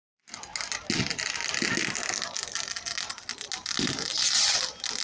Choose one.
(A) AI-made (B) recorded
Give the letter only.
B